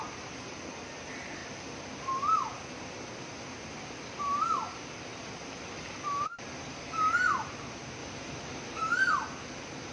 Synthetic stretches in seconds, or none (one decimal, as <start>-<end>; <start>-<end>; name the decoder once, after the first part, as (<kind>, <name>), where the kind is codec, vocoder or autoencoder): 0.0-5.1 (vocoder, BigVGAN v2); 7.0-8.0; 8.8-9.9